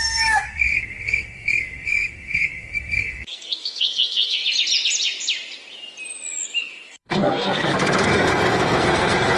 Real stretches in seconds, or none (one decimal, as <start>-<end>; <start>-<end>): 4.4-6.6